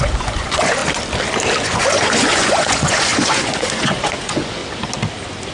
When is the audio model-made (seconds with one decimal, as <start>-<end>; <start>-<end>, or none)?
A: 0.0-0.8; 1.6-4.6